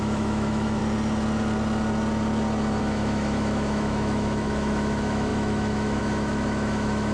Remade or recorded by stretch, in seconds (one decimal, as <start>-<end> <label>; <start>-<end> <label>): 0.0-0.8 remade; 0.8-2.8 recorded; 2.8-7.1 remade